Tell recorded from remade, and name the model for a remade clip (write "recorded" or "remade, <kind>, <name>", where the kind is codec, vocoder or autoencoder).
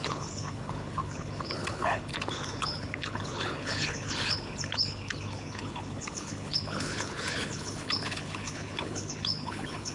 remade, codec, HILCodec